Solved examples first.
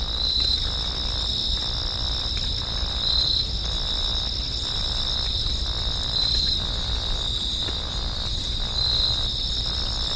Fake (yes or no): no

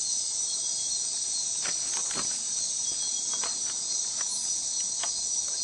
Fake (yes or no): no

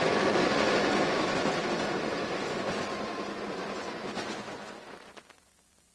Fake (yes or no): yes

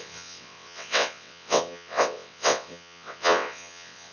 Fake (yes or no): yes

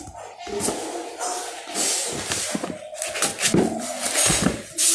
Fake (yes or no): no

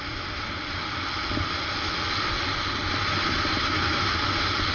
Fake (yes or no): yes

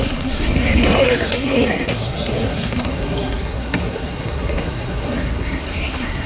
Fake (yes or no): yes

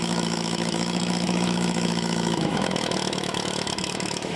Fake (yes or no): yes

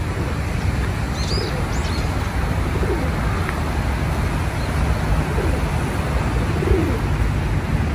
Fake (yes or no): no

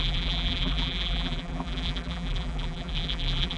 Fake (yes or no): yes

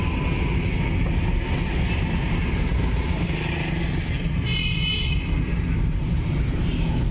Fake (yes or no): no